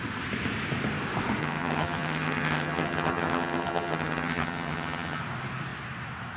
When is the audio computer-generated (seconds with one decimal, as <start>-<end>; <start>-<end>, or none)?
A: 1.4-5.2